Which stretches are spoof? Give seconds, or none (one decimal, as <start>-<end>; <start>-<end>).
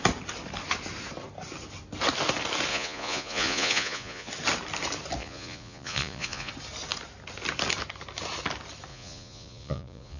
2.7-4.3; 5.2-6.5; 8.9-10.2